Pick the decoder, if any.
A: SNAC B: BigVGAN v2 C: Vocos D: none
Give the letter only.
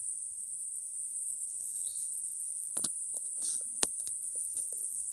A